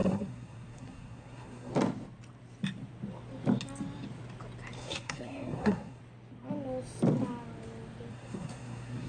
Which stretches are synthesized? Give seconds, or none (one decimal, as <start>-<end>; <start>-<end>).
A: 0.0-1.7; 4.8-6.0; 8.1-9.1